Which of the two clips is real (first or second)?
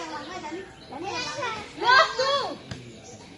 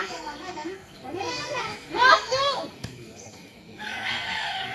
first